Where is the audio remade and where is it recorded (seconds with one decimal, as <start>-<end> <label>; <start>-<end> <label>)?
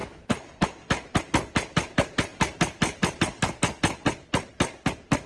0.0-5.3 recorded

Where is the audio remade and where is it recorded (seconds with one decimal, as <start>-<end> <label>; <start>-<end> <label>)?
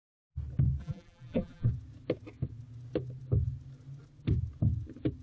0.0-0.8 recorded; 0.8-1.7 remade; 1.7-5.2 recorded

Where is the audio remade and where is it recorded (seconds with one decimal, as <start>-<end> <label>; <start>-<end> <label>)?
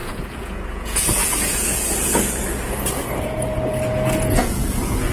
0.0-2.1 remade; 2.1-3.2 recorded; 3.2-5.1 remade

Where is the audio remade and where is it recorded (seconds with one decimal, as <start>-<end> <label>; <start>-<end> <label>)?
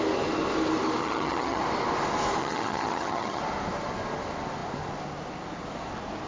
0.0-1.0 recorded; 1.0-1.6 remade; 1.6-2.4 recorded; 2.4-3.4 remade; 3.4-6.3 recorded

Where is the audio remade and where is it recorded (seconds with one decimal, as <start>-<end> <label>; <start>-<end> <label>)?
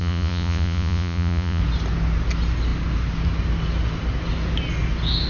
0.0-1.6 remade; 1.6-5.3 recorded